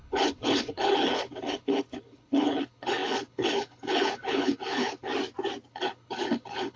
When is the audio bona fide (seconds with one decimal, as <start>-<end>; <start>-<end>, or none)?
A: 5.1-5.7